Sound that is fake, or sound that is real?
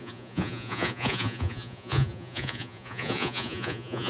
fake